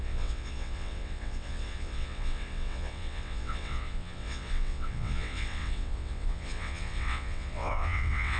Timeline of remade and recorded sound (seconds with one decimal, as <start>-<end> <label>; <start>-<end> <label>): 0.0-8.4 remade